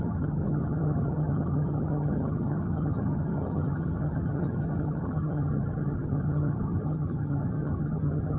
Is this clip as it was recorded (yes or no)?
no